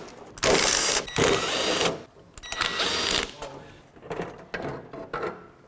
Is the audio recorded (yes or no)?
yes